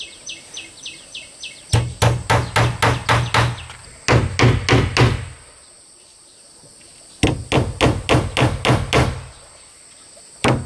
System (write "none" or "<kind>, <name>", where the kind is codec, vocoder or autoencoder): none